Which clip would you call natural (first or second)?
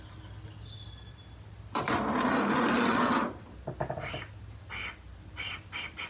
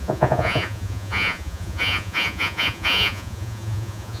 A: first